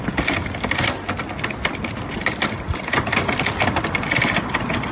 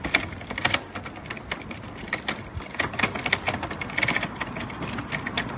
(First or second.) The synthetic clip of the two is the first